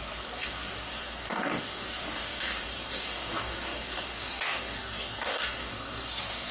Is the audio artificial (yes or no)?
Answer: yes